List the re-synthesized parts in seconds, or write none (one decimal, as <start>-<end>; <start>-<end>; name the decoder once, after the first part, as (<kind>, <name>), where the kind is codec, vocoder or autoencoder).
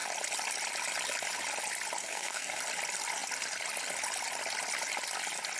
2.0-2.6 (codec, SNAC)